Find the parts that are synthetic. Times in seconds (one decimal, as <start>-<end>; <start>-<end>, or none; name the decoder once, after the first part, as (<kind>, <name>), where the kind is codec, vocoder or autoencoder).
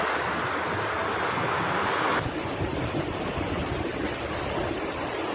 none